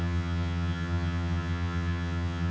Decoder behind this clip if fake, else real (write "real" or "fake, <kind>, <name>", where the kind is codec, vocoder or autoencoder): fake, vocoder, HiFi-GAN